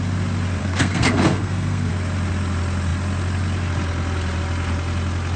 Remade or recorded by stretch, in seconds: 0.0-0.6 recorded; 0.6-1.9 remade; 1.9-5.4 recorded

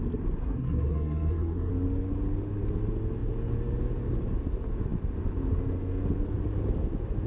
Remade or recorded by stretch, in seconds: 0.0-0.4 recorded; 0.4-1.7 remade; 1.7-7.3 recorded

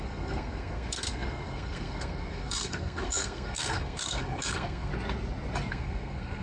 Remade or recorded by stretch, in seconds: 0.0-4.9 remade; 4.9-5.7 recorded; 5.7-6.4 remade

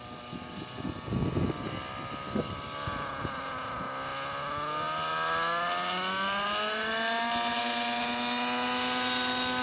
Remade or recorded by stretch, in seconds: 0.0-9.6 recorded